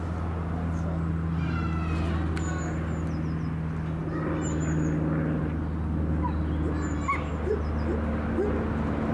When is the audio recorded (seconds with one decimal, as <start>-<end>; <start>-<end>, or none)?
0.0-9.1